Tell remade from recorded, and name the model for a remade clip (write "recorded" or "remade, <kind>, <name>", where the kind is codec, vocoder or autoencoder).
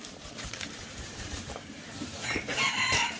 remade, vocoder, BigVGAN v2